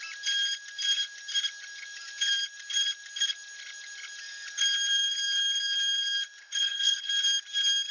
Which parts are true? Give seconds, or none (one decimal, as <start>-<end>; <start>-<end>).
0.0-6.4; 7.1-7.9